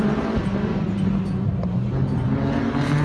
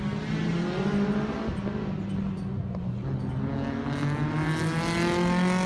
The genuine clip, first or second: second